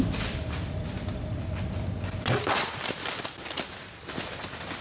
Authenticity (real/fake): real